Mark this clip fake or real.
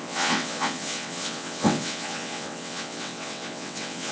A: fake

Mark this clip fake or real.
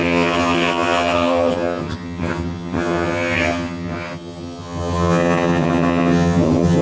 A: fake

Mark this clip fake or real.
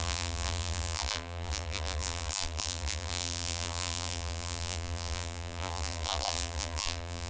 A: fake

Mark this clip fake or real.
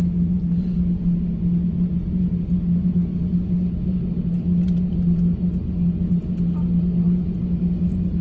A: real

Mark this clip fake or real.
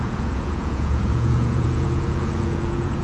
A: fake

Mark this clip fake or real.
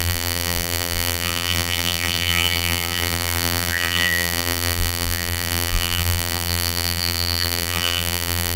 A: fake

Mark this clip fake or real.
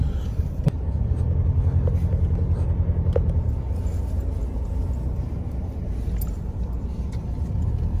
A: real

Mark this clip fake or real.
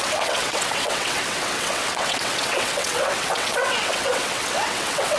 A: fake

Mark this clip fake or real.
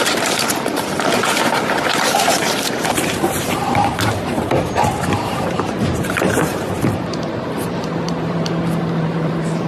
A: fake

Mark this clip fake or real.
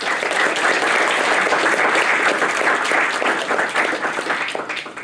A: real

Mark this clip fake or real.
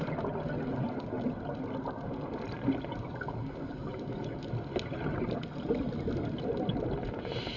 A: real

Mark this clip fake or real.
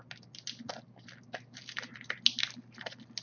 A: real